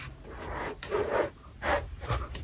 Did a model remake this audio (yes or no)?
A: yes